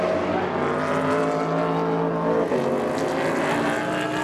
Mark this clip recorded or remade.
recorded